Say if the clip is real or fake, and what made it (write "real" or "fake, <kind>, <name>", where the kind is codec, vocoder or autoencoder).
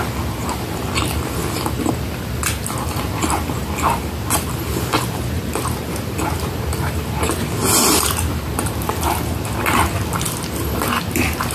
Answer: real